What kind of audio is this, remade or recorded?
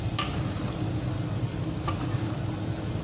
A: recorded